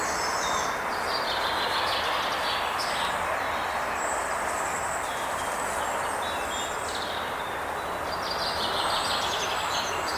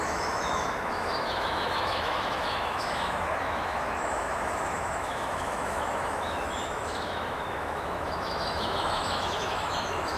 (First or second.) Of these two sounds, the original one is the first